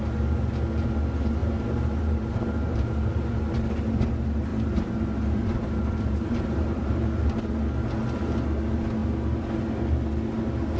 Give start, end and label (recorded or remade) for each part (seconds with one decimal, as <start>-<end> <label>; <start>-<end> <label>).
0.0-1.4 recorded; 1.4-3.4 remade; 3.4-4.5 recorded; 4.5-7.3 remade; 7.3-10.8 recorded